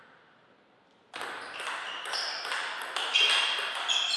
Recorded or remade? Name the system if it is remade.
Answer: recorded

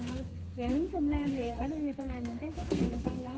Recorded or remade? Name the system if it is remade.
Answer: remade, codec, SNAC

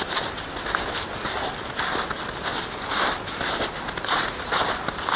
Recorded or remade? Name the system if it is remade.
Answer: recorded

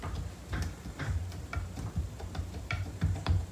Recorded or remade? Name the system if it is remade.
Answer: remade, vocoder, BigVGAN v2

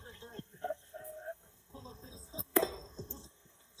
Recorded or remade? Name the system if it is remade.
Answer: remade, codec, SNAC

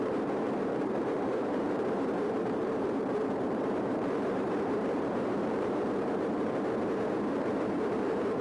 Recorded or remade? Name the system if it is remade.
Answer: remade, vocoder, BigVGAN v2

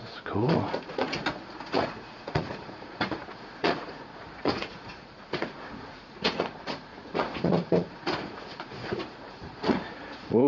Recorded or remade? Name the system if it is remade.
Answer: remade, vocoder, Vocos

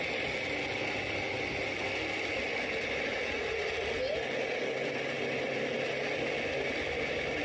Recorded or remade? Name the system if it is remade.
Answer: recorded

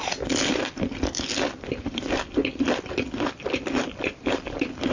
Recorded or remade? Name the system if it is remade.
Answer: recorded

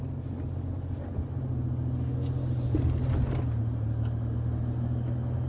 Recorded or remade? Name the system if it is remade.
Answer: recorded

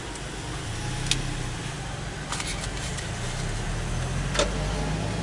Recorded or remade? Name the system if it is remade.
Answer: recorded